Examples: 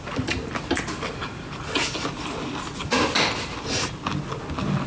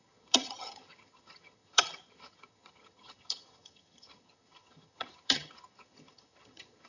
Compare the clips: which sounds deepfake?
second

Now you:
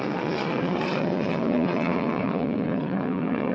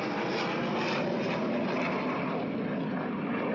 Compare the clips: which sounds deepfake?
first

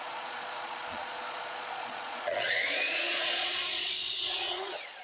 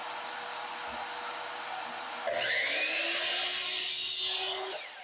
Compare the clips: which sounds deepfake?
first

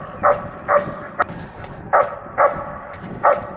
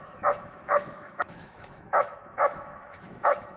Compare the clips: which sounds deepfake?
second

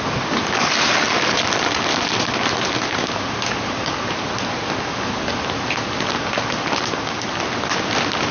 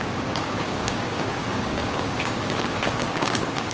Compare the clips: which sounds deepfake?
second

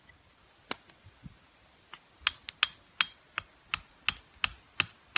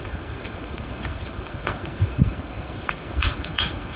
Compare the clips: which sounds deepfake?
second